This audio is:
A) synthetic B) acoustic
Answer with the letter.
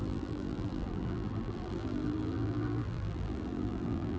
A